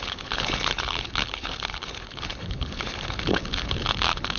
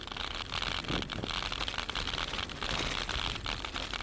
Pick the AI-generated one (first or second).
first